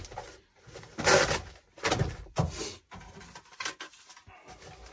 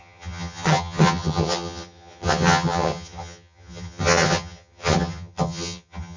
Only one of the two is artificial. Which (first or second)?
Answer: second